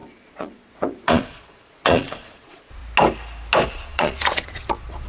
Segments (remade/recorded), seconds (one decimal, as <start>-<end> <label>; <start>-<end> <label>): 0.0-2.8 remade; 2.8-3.7 recorded; 3.7-5.1 remade